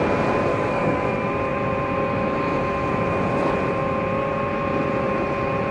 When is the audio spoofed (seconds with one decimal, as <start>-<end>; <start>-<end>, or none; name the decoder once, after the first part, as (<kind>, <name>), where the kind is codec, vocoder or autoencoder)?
0.5-1.1 (codec, DAC)